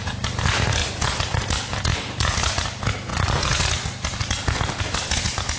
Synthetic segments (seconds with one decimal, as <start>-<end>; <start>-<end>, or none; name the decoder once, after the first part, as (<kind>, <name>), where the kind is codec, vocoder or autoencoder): none